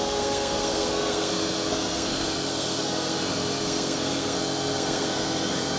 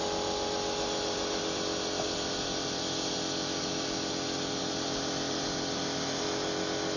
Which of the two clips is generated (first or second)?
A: first